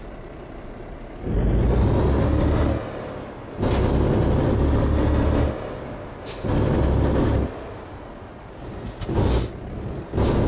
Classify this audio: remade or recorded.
recorded